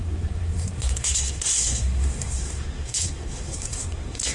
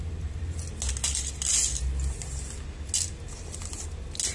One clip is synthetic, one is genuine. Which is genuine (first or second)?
second